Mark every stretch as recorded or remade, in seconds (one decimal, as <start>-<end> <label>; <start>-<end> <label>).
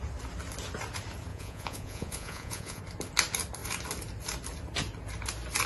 0.0-1.3 recorded; 1.3-2.8 remade; 2.8-5.7 recorded